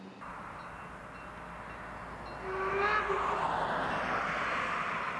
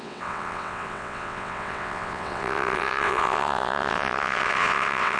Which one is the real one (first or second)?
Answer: first